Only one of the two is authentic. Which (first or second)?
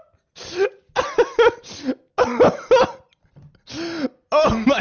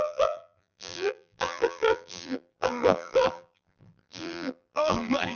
first